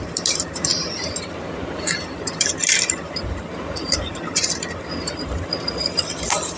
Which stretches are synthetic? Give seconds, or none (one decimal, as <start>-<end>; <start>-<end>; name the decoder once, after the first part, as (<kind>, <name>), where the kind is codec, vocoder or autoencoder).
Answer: 0.0-6.6 (vocoder, BigVGAN v2)